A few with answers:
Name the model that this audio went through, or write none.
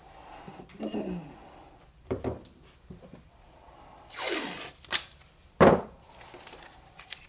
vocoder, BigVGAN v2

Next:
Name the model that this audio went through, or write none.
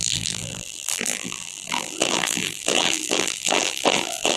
vocoder, BigVGAN v2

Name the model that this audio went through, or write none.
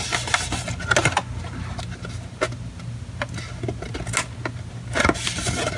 none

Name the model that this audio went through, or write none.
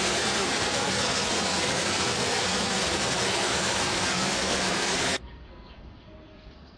codec, SNAC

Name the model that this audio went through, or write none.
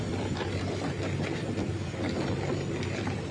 vocoder, BigVGAN v2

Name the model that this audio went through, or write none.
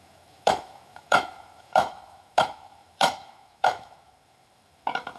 autoencoder, DAC-VAE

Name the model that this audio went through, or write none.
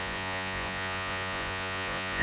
vocoder, Vocos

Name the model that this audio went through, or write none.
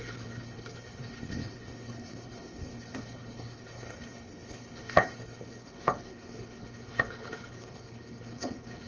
codec, HILCodec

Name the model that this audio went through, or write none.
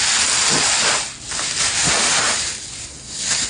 none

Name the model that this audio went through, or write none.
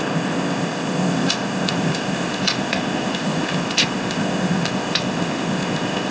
codec, ZipCodec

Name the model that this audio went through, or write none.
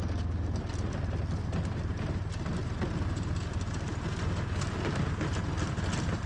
none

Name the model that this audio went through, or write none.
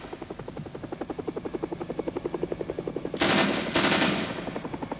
none